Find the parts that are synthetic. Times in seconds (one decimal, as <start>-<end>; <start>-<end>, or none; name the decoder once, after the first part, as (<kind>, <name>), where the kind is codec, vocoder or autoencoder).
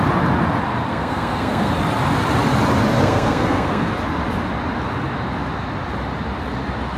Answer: 0.9-1.7 (codec, SNAC); 3.0-3.9